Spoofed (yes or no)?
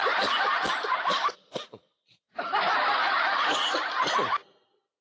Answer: no